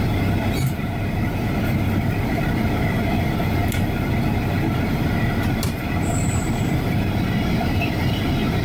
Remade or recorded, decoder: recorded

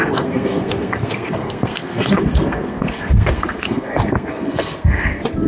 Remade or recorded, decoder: remade, codec, SNAC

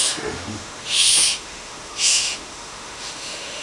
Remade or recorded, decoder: remade, autoencoder, DAC-VAE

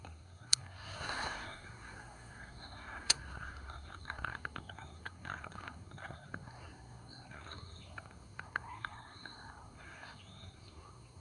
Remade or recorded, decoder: remade, codec, SNAC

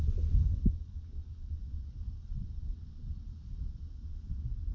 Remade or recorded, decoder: recorded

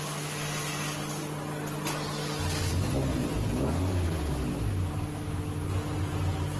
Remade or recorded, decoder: recorded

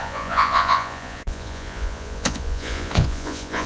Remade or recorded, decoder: remade, vocoder, Vocos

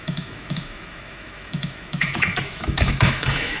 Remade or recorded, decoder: remade, autoencoder, DAC-VAE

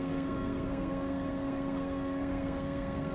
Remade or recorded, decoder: remade, codec, SNAC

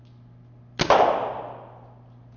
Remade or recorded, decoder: recorded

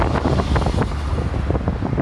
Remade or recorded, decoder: recorded